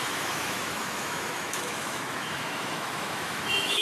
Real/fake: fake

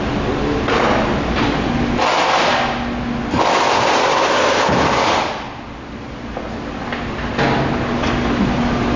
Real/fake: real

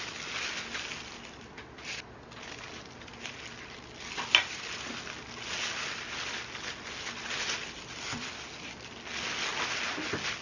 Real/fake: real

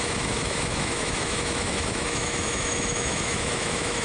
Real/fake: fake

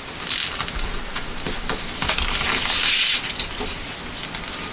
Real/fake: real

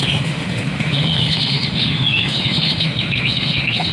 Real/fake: fake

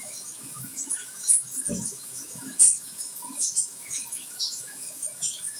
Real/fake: fake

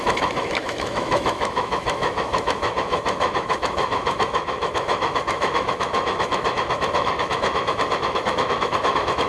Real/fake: fake